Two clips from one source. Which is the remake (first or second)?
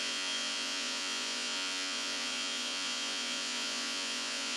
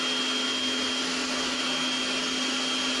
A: first